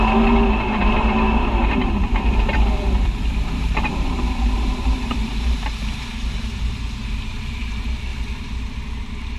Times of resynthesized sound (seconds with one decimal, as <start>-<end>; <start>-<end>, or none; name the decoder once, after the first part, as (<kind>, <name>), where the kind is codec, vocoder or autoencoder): 0.0-8.1 (vocoder, BigVGAN v2)